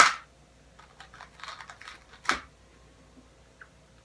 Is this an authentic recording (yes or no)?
yes